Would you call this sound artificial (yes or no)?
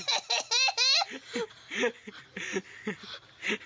no